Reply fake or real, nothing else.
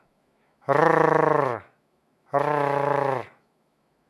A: fake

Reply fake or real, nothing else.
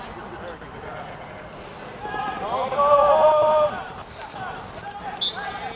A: real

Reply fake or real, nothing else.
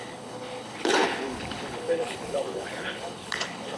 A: fake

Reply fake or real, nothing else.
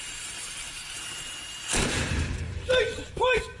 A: fake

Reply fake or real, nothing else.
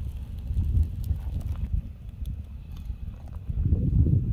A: real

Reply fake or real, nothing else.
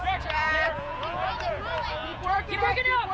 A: fake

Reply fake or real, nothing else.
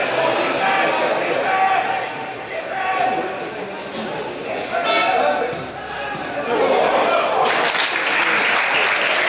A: real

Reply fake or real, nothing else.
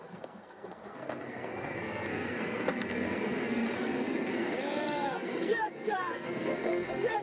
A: fake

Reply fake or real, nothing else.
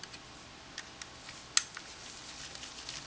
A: real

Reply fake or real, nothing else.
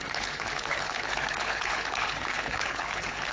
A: fake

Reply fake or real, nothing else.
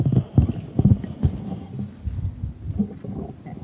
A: real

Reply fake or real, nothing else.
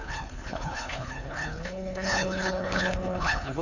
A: fake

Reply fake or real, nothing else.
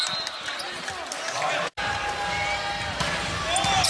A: real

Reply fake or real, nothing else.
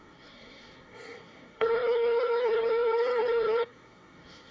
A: fake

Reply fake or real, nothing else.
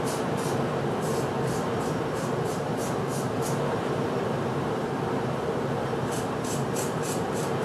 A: fake